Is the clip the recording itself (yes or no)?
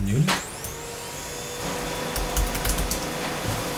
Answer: yes